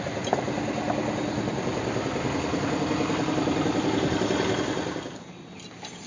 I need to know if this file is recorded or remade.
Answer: recorded